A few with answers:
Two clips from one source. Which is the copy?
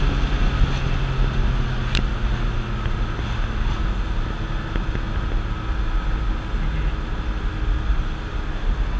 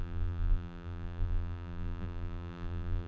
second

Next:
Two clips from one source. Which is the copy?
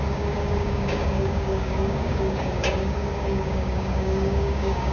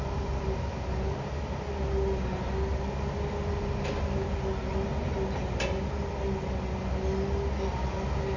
first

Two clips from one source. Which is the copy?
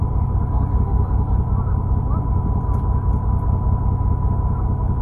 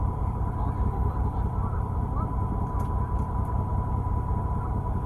second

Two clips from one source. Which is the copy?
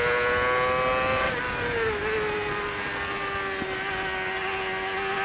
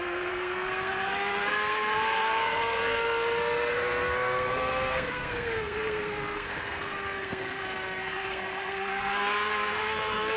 second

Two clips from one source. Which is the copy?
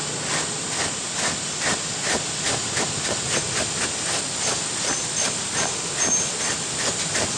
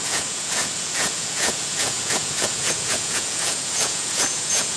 second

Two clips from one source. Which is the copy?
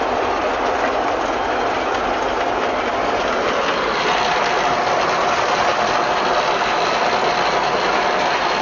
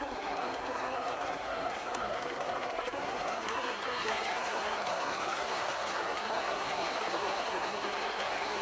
second